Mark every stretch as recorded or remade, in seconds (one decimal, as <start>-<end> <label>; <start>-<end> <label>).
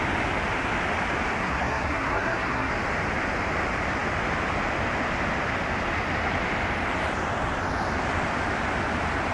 0.0-1.4 recorded; 1.4-2.7 remade; 2.7-9.3 recorded